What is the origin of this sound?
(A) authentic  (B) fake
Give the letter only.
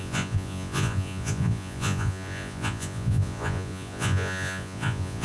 B